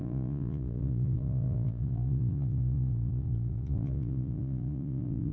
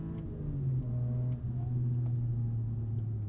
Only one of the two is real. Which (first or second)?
second